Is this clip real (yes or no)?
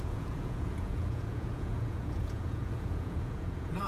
no